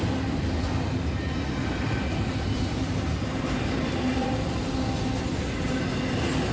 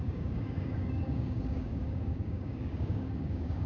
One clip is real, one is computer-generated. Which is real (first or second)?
first